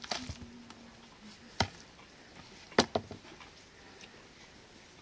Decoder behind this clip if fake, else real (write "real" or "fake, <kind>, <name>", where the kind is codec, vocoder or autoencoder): real